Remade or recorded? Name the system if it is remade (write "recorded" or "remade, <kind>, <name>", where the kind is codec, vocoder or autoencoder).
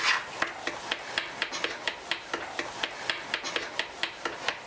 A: recorded